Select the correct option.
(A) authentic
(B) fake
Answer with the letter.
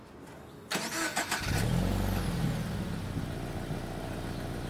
A